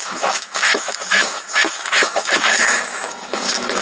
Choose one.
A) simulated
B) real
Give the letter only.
A